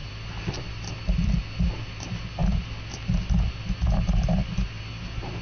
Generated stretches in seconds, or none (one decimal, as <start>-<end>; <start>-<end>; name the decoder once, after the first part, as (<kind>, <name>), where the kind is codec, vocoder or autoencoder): 0.0-1.3 (vocoder, BigVGAN v2)